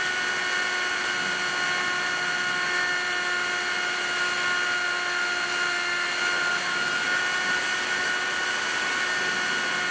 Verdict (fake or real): real